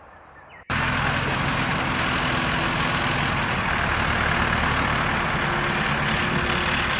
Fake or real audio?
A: real